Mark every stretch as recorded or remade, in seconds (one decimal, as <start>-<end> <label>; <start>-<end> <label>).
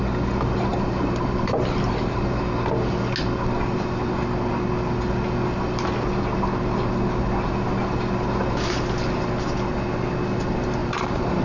0.0-0.7 recorded; 0.7-2.3 remade; 2.3-10.8 recorded; 10.8-11.4 remade